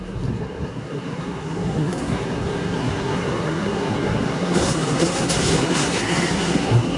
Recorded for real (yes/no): no